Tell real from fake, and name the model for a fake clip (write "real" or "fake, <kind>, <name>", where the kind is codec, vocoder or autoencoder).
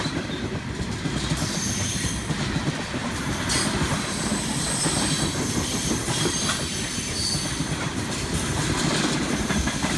real